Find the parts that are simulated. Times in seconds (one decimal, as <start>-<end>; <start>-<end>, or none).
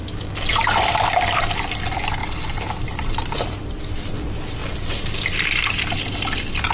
2.2-3.8